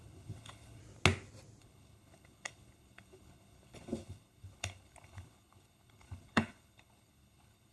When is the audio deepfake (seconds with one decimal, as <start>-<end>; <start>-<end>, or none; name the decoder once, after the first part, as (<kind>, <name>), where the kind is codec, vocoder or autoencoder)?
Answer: 0.0-0.8 (codec, HILCodec); 1.6-7.7